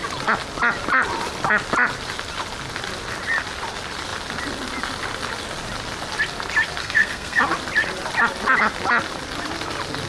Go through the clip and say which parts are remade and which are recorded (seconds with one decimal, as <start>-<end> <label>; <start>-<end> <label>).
0.0-6.8 recorded; 6.8-7.4 remade; 7.4-10.1 recorded

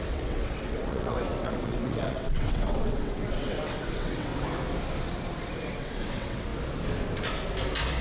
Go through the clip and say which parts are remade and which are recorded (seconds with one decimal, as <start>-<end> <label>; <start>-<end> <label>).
0.0-4.3 remade; 4.3-5.7 recorded; 5.7-6.5 remade; 6.5-8.0 recorded

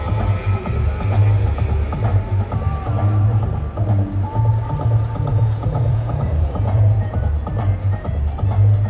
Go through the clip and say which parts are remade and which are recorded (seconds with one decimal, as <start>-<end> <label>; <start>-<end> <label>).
0.0-5.3 recorded; 5.3-7.2 remade; 7.2-8.9 recorded

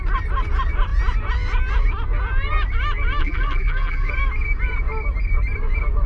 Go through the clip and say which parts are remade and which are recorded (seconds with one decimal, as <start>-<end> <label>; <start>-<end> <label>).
0.0-3.2 recorded; 3.2-4.1 remade; 4.1-6.1 recorded

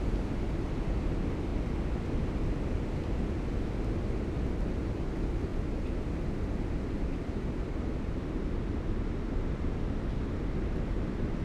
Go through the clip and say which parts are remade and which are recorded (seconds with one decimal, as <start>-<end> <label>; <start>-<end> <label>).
0.0-11.4 recorded

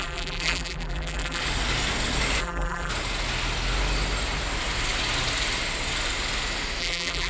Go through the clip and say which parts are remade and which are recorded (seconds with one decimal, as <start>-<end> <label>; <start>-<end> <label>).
0.0-1.4 remade; 1.4-2.4 recorded; 2.4-2.9 remade; 2.9-6.8 recorded; 6.8-7.3 remade

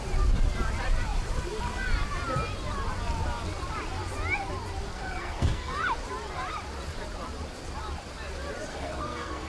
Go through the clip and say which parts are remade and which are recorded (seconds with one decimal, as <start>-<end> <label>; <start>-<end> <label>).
0.0-4.9 recorded; 4.9-5.8 remade; 5.8-8.7 recorded; 8.7-9.5 remade

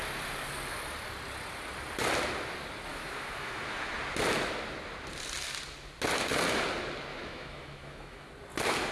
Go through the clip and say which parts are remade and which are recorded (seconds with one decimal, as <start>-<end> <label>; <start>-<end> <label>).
0.0-2.9 recorded; 2.9-3.9 remade; 3.9-7.1 recorded; 7.1-8.3 remade; 8.3-8.9 recorded